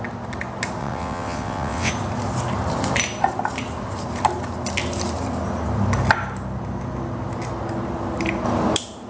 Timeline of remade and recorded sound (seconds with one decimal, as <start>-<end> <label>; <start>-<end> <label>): 0.0-0.8 recorded; 0.8-1.9 remade; 1.9-9.1 recorded

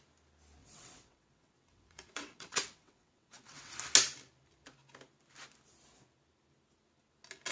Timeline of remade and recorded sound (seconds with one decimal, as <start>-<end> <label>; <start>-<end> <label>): 0.0-0.6 recorded; 0.6-3.7 remade; 3.7-7.5 recorded

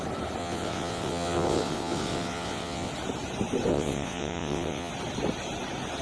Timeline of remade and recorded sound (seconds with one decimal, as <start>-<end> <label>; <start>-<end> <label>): 0.0-0.4 recorded; 0.4-2.9 remade; 2.9-3.7 recorded; 3.7-4.9 remade; 4.9-6.0 recorded

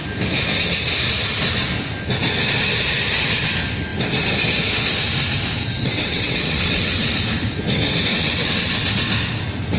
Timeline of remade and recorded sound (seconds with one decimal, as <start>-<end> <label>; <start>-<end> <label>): 0.0-5.7 recorded; 5.7-7.0 remade; 7.0-8.1 recorded; 8.1-8.7 remade; 8.7-9.8 recorded

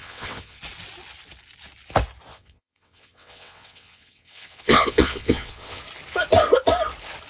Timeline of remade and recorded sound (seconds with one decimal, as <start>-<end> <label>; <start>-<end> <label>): 0.0-0.6 remade; 0.6-2.3 recorded; 2.3-5.8 remade; 5.8-7.3 recorded

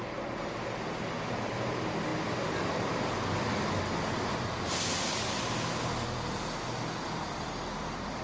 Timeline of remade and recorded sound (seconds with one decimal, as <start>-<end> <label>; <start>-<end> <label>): 0.0-8.2 recorded

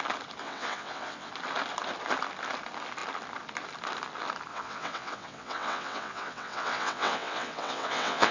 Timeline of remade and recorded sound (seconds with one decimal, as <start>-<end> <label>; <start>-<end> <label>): 0.0-0.4 recorded; 0.4-1.3 remade; 1.3-4.5 recorded; 4.5-8.3 remade

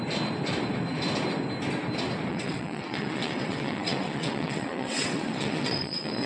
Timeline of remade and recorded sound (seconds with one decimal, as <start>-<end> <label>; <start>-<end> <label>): 0.0-2.3 recorded; 2.3-6.3 remade